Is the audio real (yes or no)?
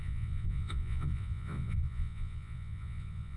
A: no